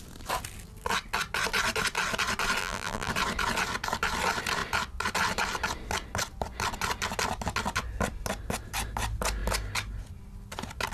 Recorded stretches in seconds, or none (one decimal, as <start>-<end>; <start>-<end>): 0.0-2.6; 3.1-10.9